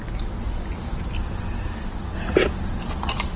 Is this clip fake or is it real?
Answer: real